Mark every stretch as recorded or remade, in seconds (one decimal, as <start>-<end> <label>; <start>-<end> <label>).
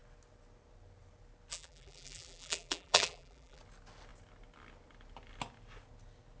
0.0-1.5 recorded; 1.5-3.6 remade; 3.6-6.4 recorded